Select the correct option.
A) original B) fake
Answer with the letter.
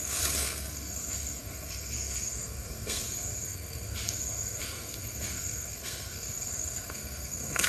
B